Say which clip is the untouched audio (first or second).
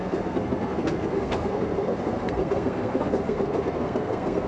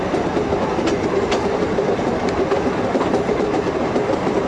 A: second